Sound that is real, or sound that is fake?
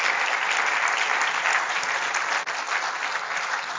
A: real